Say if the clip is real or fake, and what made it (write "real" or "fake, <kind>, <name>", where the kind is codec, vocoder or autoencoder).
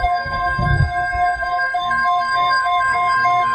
fake, codec, SNAC